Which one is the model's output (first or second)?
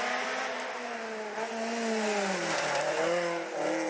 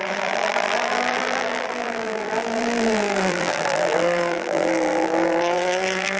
second